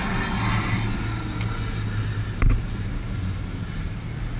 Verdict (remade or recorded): recorded